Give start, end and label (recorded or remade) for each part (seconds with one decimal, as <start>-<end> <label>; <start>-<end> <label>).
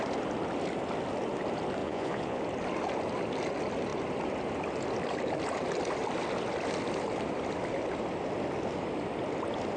0.0-1.8 recorded; 1.8-2.4 remade; 2.4-9.8 recorded